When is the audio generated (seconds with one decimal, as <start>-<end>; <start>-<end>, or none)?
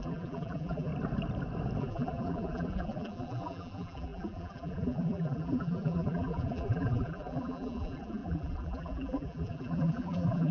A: 0.0-0.9; 1.8-10.5